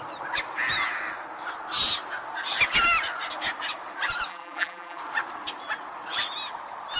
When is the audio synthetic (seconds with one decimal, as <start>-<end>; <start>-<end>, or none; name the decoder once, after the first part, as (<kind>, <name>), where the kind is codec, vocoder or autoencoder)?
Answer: 4.3-5.0 (vocoder, BigVGAN v2)